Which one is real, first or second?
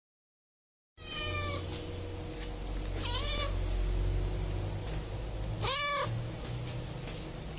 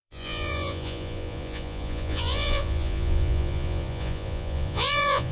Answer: first